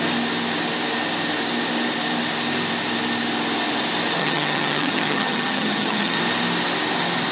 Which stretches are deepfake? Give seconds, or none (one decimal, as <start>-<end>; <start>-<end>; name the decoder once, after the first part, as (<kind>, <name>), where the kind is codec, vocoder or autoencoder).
4.2-6.2 (vocoder, HiFi-GAN)